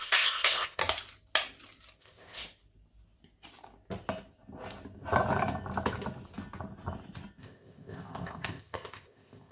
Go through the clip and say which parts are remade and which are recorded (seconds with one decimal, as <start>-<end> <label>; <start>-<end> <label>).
0.0-0.8 remade; 0.8-2.0 recorded; 2.0-2.4 remade; 2.4-7.4 recorded; 7.4-9.5 remade